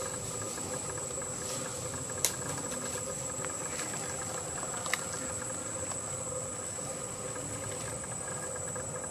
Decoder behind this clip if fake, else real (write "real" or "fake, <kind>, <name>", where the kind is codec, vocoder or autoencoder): real